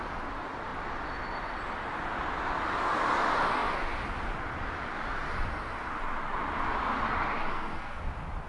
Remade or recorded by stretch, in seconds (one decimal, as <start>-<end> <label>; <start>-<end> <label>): 0.0-7.5 recorded; 7.5-8.0 remade; 8.0-8.5 recorded